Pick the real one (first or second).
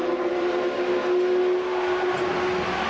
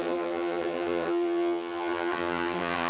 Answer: first